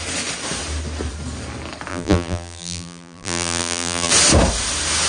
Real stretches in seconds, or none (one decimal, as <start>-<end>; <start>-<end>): 0.0-1.9; 4.1-5.1